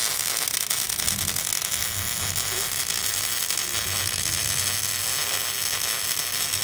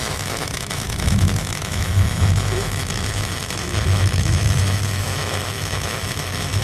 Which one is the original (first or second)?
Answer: first